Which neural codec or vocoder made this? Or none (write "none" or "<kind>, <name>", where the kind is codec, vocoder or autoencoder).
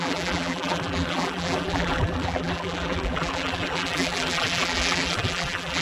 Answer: vocoder, BigVGAN v2